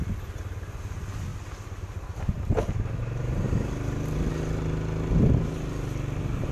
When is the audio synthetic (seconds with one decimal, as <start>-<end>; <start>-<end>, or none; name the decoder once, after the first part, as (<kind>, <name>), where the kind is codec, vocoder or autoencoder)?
none